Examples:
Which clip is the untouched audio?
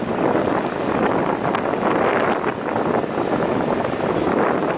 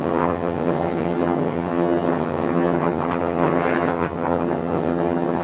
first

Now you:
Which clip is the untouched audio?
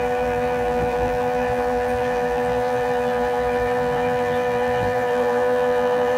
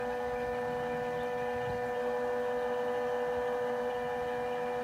second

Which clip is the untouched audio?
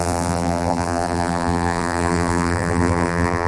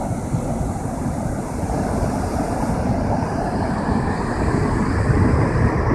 second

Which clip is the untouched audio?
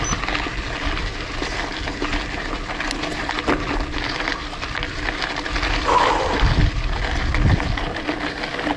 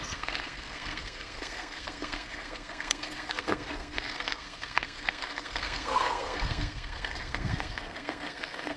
first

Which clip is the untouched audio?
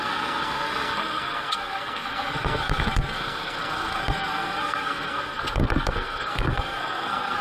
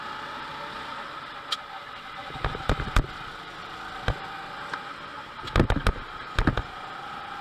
second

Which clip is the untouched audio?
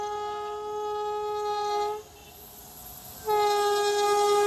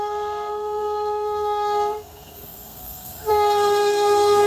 first